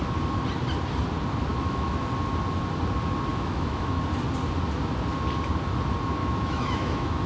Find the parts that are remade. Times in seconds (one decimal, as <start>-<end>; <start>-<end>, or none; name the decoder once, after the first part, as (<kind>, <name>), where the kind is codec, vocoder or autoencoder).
1.5-2.0 (autoencoder, DAC-VAE); 3.3-4.0; 6.2-7.3